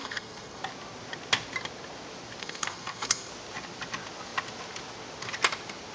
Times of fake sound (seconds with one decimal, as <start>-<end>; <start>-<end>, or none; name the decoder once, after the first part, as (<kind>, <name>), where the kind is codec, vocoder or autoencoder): 0.0-0.6 (codec, SNAC); 2.4-3.3